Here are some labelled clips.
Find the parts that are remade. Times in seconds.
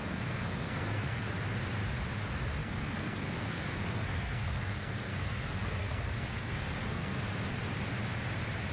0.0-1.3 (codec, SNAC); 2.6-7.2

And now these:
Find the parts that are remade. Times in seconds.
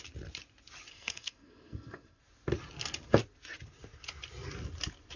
0.9-2.2 (codec, SNAC)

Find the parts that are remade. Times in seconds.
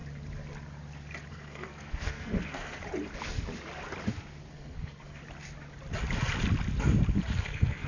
1.3-2.8 (codec, SNAC); 4.5-5.2; 7.3-7.9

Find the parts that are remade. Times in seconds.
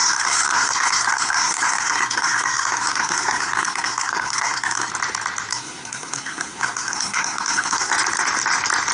0.0-4.9 (codec, SNAC); 5.5-7.9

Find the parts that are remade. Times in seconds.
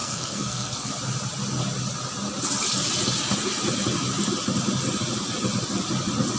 0.0-0.9 (codec, SNAC)